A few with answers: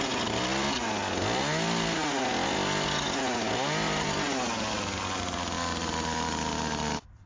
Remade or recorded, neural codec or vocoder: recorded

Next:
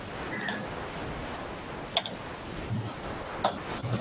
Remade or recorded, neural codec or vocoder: recorded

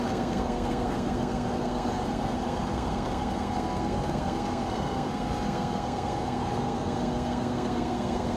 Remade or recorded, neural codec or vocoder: remade, codec, SNAC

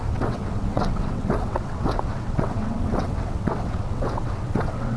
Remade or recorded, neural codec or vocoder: remade, vocoder, WaveNeXt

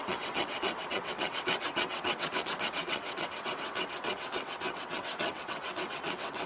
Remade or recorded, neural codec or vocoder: remade, vocoder, WaveNeXt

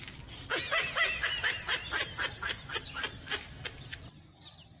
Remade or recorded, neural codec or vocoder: recorded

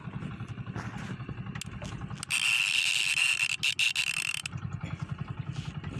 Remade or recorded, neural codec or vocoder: recorded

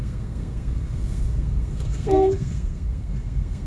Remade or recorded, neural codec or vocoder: remade, codec, SNAC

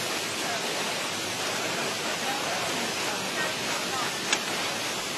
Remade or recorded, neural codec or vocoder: recorded